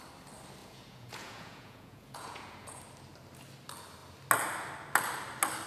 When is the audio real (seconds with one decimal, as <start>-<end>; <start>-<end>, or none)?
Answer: 0.0-0.6; 2.8-5.7